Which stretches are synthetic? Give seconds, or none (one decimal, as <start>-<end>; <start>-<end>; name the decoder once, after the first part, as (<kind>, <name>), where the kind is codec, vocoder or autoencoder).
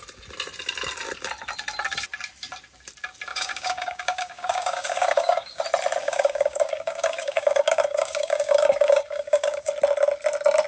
3.3-5.6 (codec, DAC); 6.0-9.7